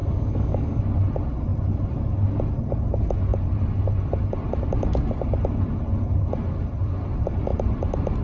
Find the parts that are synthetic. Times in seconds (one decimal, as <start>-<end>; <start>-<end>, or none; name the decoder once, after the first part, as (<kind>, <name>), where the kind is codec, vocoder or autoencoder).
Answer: 0.0-0.8 (codec, DAC)